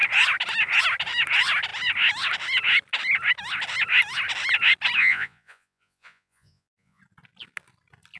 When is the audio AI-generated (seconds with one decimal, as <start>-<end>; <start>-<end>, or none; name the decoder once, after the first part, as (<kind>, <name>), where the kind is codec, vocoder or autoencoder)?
5.0-7.0 (vocoder, Vocos)

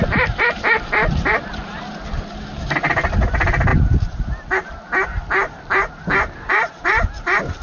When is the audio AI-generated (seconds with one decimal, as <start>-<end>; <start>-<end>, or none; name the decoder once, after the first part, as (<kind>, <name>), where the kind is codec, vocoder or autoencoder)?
none

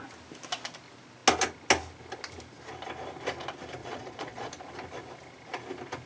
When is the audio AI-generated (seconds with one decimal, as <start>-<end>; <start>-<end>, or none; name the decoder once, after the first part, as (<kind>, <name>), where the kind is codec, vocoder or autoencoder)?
3.8-4.5 (vocoder, Vocos)

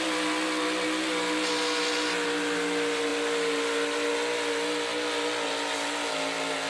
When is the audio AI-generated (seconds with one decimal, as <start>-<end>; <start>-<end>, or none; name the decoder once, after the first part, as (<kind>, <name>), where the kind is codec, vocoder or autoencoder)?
none

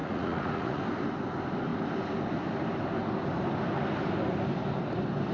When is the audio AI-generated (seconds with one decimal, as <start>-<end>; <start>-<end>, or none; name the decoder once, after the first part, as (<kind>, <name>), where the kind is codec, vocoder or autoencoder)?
0.0-0.8 (vocoder, Vocos)

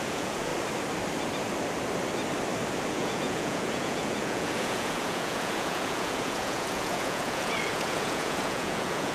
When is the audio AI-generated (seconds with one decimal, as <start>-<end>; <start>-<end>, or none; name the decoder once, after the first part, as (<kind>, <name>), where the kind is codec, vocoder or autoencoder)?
0.0-0.5 (vocoder, Vocos); 2.9-9.1